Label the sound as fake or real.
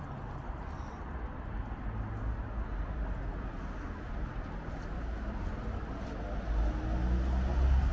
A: real